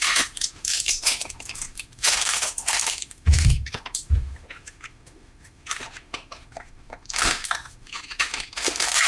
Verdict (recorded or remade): remade